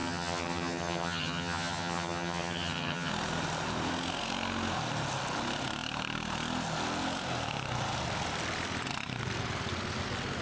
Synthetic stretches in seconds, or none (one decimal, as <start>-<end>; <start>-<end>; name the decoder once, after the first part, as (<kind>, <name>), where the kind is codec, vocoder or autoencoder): 0.0-3.1 (vocoder, HiFi-GAN)